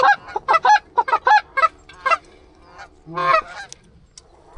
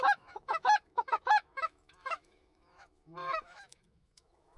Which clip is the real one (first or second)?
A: first